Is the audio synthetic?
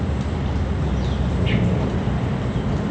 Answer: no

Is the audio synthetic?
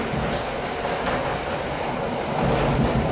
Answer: no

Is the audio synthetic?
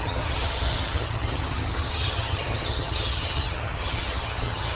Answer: yes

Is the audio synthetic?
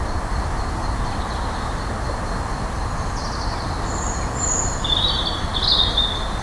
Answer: no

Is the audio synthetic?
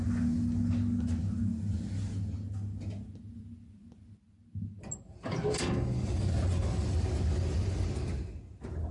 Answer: no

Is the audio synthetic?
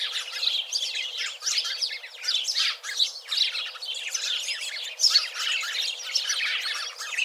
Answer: no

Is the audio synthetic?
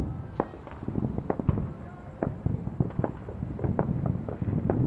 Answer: no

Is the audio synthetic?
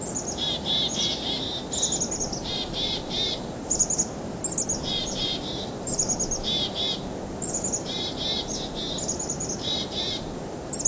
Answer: no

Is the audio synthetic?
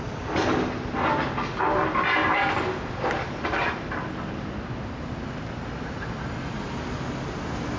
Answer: no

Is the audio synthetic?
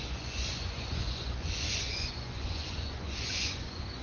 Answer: yes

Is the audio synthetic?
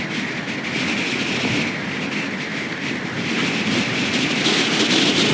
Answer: no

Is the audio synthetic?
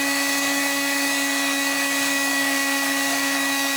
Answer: yes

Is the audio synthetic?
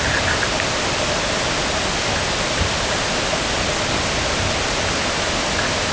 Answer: no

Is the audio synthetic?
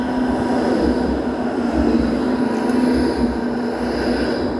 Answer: no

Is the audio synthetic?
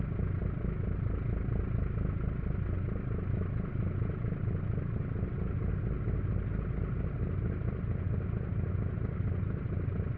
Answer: no